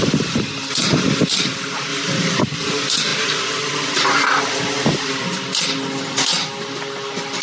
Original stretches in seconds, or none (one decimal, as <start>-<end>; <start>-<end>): 0.0-1.9; 2.4-7.4